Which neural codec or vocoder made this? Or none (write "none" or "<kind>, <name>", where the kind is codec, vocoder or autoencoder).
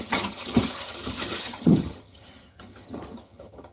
vocoder, HiFi-GAN